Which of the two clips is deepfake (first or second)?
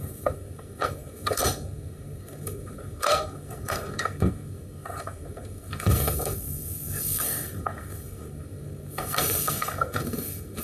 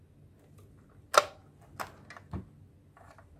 first